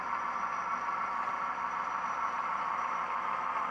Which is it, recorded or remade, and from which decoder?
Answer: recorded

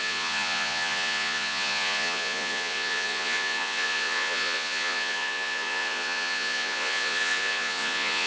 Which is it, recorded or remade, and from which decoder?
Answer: remade, vocoder, Vocos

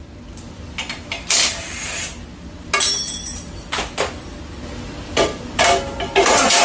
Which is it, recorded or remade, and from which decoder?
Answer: recorded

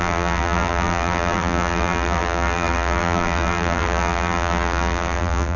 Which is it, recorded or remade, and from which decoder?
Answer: remade, vocoder, BigVGAN v2